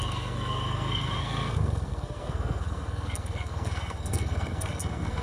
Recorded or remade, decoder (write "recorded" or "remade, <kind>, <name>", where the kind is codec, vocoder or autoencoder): remade, codec, SNAC